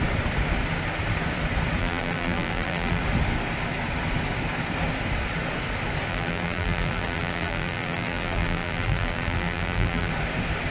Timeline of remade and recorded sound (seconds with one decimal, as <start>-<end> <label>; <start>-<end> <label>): 0.0-1.8 recorded; 1.8-3.0 remade; 3.0-6.1 recorded; 6.1-10.1 remade; 10.1-10.7 recorded